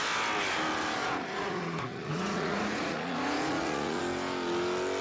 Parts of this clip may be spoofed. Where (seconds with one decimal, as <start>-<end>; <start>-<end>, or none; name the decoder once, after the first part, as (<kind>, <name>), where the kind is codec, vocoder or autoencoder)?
1.0-4.0 (vocoder, Vocos)